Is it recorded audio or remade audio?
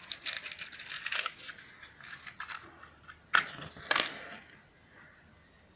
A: recorded